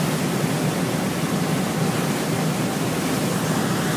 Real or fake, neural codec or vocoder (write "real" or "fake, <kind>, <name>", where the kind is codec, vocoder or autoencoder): real